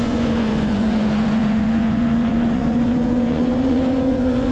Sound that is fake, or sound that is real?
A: fake